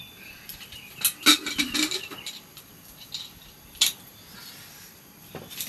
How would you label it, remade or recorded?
recorded